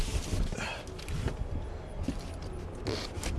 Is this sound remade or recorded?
recorded